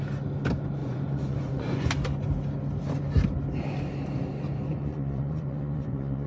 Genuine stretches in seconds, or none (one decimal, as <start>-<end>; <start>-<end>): 0.0-0.8; 1.9-4.7